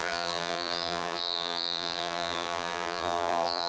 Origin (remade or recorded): remade